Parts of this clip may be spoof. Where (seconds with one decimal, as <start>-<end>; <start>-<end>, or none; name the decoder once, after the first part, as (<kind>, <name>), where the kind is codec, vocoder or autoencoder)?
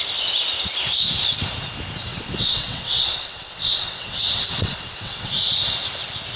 2.1-5.3 (vocoder, WaveNeXt)